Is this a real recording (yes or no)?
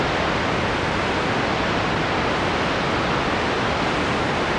yes